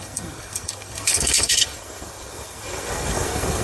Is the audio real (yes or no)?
no